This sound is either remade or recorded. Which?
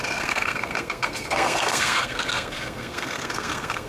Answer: remade